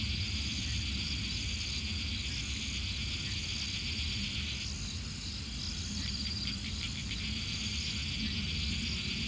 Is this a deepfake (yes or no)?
no